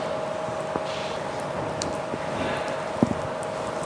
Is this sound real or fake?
real